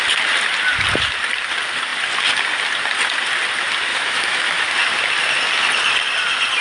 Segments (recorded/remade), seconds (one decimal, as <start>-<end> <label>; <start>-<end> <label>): 0.0-3.9 recorded; 3.9-4.7 remade; 4.7-6.6 recorded